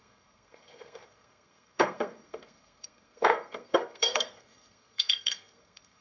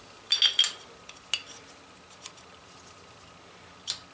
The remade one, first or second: first